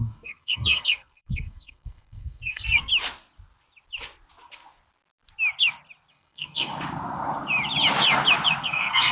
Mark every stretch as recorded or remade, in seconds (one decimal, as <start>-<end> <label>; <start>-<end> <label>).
0.0-2.9 remade; 2.9-6.1 recorded; 6.1-6.7 remade; 6.7-8.6 recorded; 8.6-9.1 remade